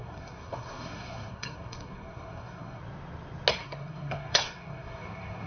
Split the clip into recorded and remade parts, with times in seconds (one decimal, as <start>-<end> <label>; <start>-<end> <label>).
0.0-2.8 remade; 2.8-3.5 recorded; 3.5-5.5 remade